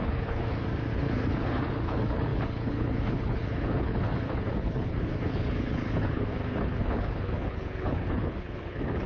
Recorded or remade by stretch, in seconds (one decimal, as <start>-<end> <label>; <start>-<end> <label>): 0.0-0.4 remade; 0.4-0.9 recorded; 0.9-9.1 remade